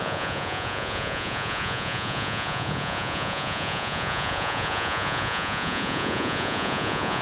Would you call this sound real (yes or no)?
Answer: no